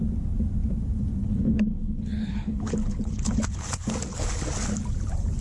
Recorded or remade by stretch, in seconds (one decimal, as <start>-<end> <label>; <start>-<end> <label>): 0.0-1.2 recorded; 1.2-3.9 remade; 3.9-5.4 recorded